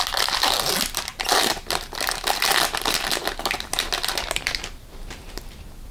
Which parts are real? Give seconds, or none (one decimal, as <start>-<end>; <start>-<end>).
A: 0.0-5.9